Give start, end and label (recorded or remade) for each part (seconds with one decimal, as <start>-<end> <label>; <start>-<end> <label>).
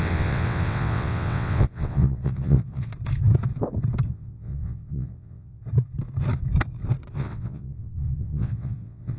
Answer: 0.0-2.9 remade; 2.9-4.1 recorded; 4.1-5.6 remade; 5.6-7.1 recorded; 7.1-9.2 remade